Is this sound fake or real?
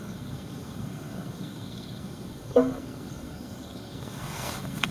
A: fake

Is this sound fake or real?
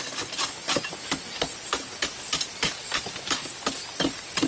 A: real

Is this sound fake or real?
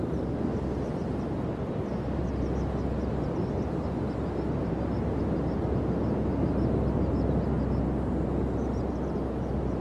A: real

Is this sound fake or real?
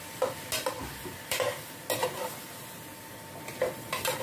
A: real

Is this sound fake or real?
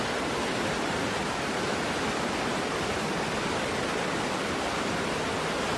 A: real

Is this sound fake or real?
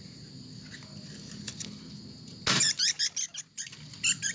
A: real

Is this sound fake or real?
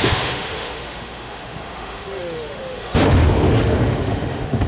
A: fake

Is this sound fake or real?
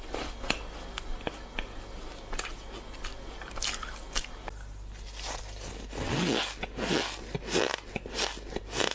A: real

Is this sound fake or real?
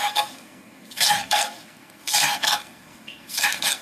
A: fake